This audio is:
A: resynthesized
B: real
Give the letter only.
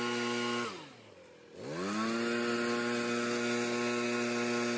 B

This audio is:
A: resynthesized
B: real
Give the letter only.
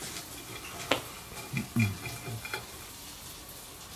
B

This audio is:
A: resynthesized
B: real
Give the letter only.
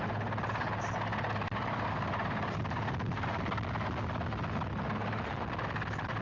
B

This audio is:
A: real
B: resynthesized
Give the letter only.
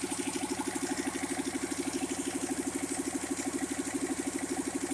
A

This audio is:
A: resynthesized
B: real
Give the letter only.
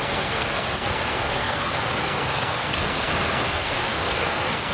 A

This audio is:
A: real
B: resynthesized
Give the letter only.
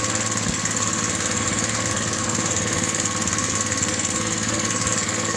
B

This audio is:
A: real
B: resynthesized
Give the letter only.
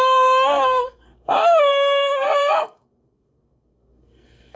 B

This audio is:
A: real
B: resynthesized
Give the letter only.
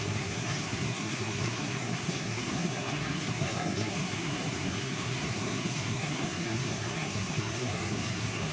B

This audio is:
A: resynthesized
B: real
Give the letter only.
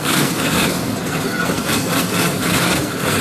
A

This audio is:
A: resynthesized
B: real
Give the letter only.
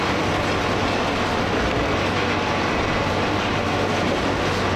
B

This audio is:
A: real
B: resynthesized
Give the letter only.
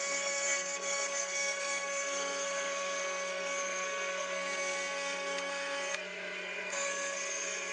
B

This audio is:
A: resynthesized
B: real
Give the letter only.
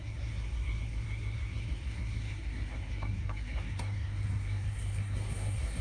A